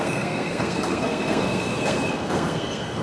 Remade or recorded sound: remade